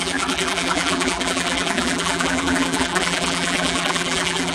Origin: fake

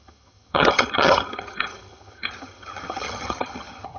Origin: fake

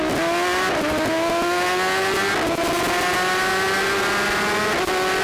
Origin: real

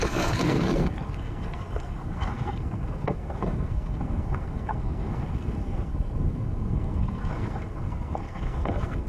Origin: fake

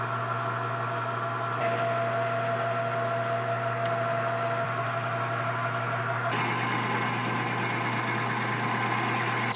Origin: real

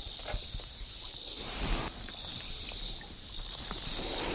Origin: real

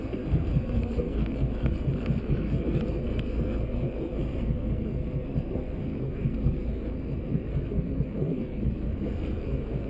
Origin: fake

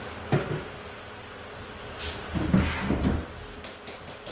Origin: real